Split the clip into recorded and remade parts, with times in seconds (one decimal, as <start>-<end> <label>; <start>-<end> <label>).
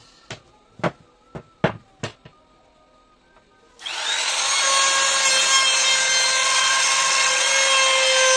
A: 0.0-6.4 recorded; 6.4-7.5 remade; 7.5-8.4 recorded